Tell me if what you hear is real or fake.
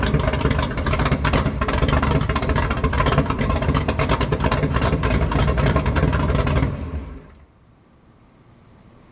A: fake